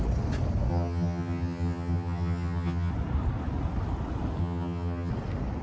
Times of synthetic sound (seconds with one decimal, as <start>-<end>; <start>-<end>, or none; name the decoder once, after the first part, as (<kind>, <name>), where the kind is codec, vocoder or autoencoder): 0.7-2.9 (vocoder, HiFi-GAN); 4.4-5.1

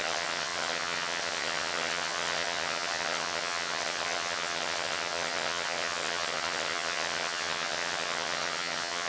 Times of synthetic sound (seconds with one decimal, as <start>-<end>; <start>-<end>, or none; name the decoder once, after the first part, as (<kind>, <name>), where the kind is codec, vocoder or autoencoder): 0.0-9.1 (vocoder, HiFi-GAN)

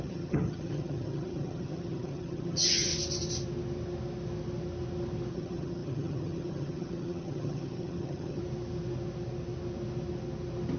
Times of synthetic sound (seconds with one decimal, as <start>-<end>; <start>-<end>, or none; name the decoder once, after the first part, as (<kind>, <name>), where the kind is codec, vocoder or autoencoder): 0.0-2.9 (vocoder, HiFi-GAN); 5.3-8.4

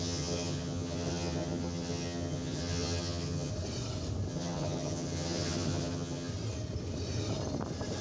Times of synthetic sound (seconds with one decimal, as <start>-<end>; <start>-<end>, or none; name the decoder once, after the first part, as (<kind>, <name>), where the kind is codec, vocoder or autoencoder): 0.0-3.5 (vocoder, HiFi-GAN); 4.3-6.3

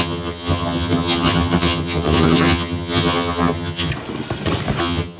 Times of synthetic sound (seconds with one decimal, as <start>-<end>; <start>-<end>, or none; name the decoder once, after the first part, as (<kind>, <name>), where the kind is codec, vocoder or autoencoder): 0.0-3.9 (vocoder, HiFi-GAN); 4.8-5.2

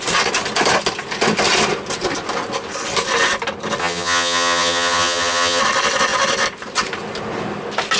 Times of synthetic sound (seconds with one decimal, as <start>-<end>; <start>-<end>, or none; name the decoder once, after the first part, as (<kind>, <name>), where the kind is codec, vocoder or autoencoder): 3.8-5.6 (vocoder, HiFi-GAN)

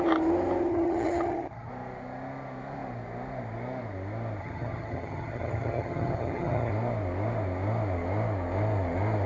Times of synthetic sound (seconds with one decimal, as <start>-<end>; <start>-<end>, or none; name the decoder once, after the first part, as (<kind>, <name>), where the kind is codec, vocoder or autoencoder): 0.7-1.7 (vocoder, HiFi-GAN); 4.4-6.7